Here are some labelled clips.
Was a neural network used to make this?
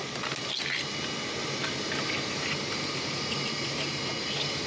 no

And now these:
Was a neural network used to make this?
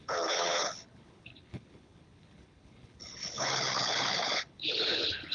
yes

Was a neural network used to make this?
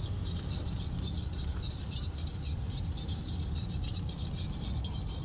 no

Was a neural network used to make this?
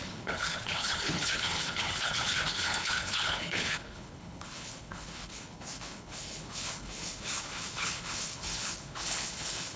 yes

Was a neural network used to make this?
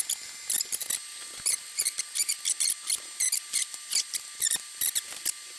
no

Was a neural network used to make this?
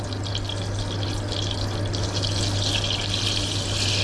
no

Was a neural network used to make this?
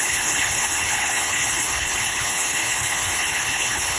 yes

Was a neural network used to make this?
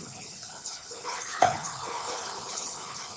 yes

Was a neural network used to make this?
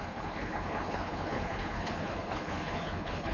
yes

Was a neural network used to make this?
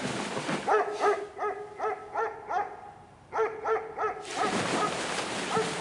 no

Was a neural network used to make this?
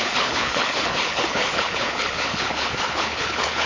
yes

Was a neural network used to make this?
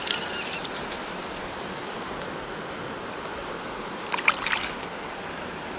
no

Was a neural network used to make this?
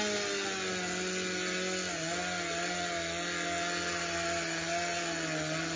no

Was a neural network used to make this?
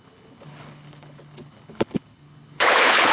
yes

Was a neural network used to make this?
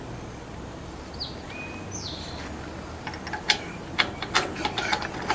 no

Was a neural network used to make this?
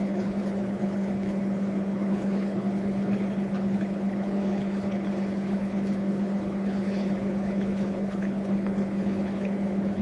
yes